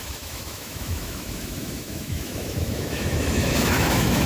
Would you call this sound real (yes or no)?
no